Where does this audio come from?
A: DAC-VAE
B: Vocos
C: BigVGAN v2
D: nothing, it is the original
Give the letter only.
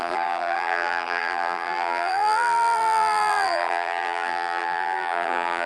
C